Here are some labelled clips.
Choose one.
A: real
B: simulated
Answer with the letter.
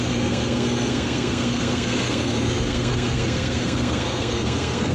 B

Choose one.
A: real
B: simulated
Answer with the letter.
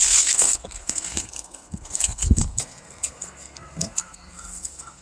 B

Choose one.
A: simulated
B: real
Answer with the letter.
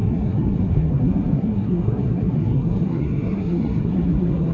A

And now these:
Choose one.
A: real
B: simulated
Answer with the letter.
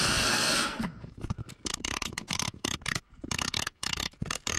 B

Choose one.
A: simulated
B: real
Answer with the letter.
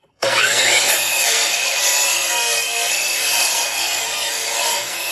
A